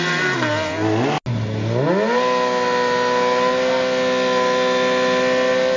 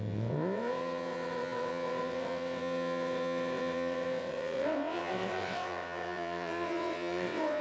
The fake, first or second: second